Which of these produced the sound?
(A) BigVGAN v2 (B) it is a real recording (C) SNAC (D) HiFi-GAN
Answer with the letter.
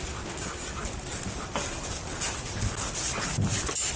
B